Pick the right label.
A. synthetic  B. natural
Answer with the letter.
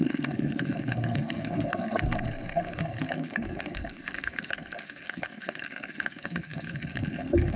A